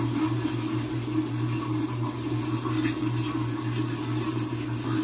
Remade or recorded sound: recorded